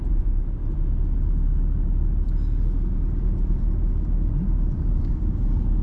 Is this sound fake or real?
real